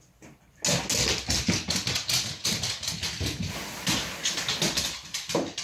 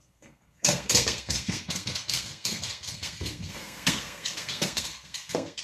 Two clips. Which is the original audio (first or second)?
first